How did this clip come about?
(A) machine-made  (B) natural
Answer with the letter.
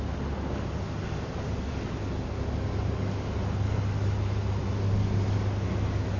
B